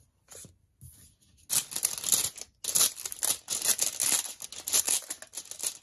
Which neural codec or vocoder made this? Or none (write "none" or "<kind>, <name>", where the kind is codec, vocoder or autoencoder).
none